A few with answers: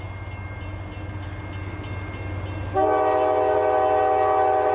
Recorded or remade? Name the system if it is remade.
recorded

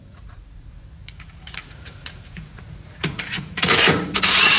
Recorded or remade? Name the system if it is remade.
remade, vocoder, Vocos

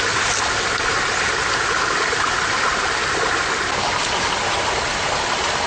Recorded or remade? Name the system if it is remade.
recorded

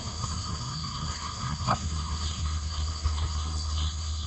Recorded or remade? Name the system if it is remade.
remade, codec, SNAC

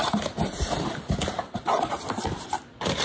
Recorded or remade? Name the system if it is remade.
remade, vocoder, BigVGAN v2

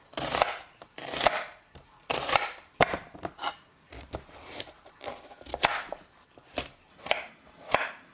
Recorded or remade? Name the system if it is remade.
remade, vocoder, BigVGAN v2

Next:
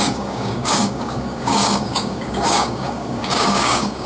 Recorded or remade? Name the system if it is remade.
remade, codec, DAC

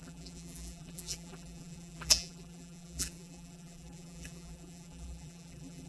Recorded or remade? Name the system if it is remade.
remade, vocoder, BigVGAN v2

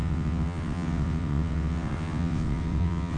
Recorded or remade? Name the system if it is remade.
remade, vocoder, WaveNeXt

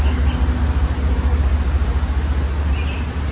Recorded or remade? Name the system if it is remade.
recorded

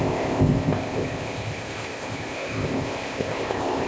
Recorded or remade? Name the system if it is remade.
remade, codec, ZipCodec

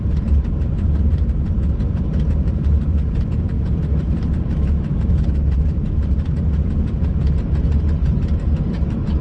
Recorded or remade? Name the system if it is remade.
remade, vocoder, BigVGAN v2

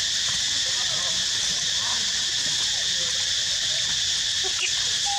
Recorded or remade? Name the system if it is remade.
recorded